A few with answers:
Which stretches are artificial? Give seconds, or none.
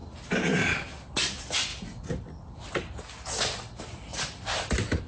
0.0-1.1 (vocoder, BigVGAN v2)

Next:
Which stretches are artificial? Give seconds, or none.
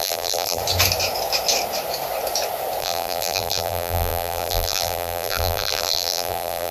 0.0-0.6 (vocoder, BigVGAN v2); 2.8-6.7